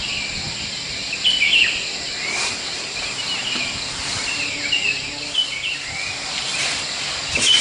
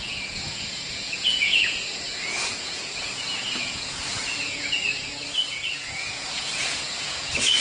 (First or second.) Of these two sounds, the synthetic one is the second